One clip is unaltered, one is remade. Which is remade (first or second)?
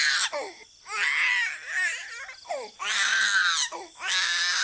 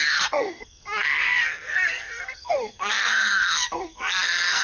second